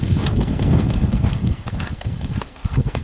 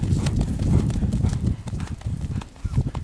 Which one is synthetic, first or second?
first